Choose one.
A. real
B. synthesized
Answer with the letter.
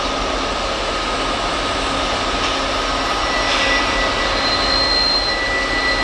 A